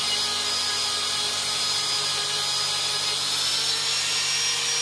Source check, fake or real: real